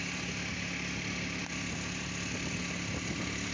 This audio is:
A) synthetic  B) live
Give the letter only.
B